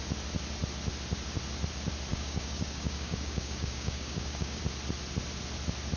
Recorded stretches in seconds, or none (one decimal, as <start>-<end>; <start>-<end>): 0.0-2.1; 4.6-6.0